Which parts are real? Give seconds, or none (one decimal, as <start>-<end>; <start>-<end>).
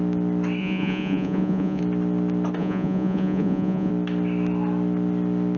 0.0-0.6; 1.8-2.6; 3.9-5.6